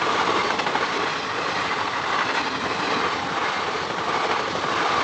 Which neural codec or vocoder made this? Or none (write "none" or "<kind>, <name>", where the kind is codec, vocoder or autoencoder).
none